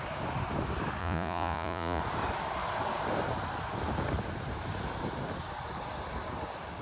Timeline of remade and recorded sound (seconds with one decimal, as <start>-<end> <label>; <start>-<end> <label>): 0.0-1.0 recorded; 1.0-2.0 remade; 2.0-6.8 recorded